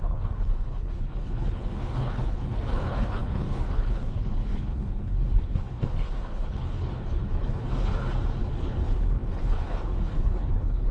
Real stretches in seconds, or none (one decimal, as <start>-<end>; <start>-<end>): 7.9-8.4